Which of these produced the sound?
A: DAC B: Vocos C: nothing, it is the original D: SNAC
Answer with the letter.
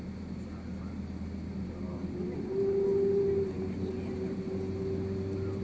C